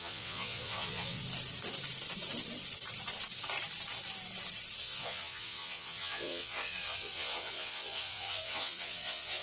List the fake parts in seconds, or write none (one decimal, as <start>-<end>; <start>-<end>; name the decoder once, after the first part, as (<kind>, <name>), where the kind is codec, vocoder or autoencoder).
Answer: 0.0-1.2 (vocoder, Vocos); 4.8-9.4